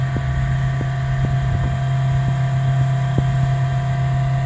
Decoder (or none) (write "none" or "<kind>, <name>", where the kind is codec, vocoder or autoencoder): none